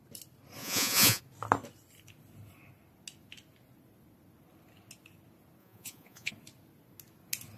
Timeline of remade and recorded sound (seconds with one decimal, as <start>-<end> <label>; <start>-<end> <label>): 0.0-0.6 recorded; 0.6-1.2 remade; 1.2-5.6 recorded; 5.6-6.3 remade; 6.3-7.6 recorded